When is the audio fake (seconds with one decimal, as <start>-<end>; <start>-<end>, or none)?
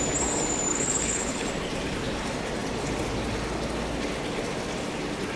0.7-1.5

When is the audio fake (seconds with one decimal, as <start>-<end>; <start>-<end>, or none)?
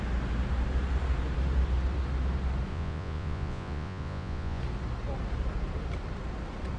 2.7-4.6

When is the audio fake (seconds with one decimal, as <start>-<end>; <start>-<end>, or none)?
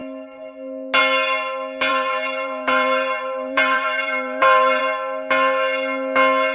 1.9-4.8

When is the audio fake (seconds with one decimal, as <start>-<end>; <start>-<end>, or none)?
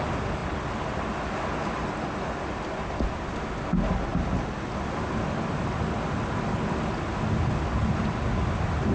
none